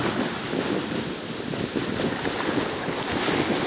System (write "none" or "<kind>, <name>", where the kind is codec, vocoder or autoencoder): none